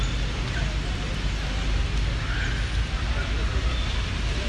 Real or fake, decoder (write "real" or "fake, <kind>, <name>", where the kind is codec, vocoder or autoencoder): real